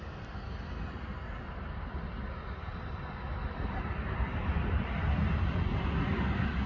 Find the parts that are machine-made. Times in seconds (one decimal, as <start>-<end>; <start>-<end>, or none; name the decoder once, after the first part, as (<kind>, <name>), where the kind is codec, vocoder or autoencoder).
none